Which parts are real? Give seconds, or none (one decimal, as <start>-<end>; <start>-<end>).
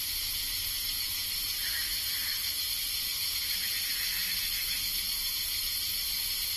0.0-6.6